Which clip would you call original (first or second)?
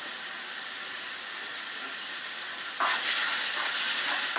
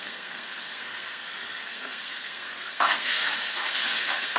first